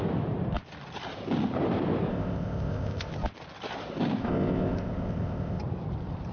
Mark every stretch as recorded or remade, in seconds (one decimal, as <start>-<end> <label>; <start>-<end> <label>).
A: 0.0-2.1 recorded; 2.1-3.1 remade; 3.1-4.2 recorded; 4.2-5.6 remade; 5.6-6.3 recorded